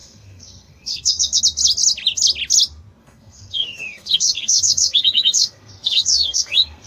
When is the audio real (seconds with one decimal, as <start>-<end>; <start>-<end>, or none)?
1.4-3.0